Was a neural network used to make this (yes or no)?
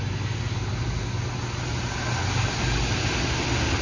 no